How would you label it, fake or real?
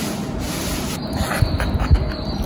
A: real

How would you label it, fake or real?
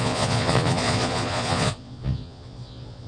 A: fake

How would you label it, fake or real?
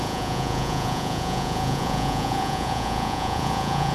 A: fake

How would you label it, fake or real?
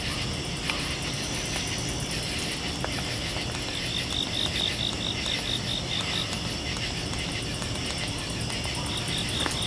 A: real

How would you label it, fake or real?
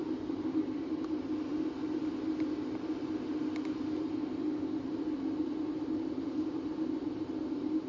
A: real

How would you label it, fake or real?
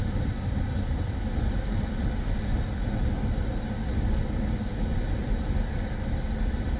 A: real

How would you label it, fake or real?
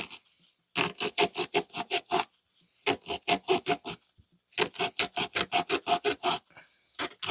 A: real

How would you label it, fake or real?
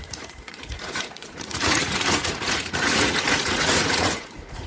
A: fake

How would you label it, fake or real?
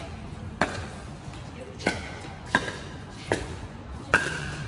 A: fake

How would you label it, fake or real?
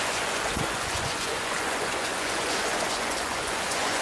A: fake